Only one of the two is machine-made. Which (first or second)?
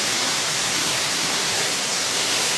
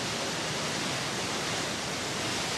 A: first